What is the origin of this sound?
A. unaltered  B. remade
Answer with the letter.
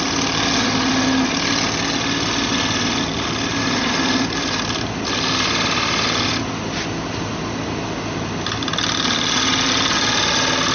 A